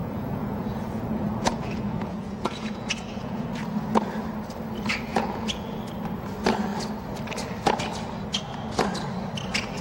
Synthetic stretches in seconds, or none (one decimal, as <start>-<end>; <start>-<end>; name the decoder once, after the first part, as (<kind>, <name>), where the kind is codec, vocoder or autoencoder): 0.0-3.5 (vocoder, Vocos); 5.1-5.8